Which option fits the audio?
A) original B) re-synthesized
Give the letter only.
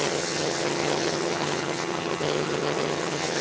B